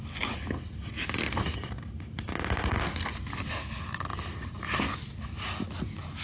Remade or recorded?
recorded